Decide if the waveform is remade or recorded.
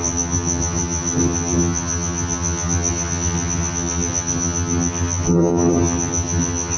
remade